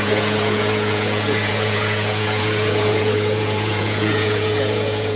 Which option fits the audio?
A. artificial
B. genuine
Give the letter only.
A